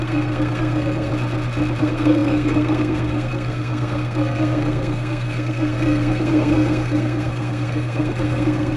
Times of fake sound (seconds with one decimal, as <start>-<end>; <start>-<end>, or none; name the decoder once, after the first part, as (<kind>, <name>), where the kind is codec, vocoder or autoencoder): 0.0-1.1 (codec, SNAC); 1.8-8.8